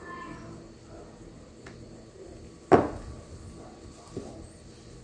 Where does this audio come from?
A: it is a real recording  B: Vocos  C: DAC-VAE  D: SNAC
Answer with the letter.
A